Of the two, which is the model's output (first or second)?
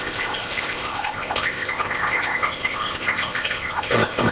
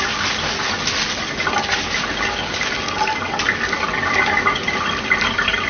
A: first